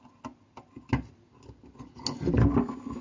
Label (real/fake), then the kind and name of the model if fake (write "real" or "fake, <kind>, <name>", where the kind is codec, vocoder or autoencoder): real